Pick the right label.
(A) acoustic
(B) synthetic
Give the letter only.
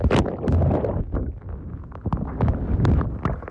A